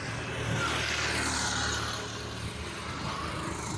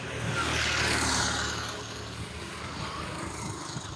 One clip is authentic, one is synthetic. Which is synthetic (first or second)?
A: second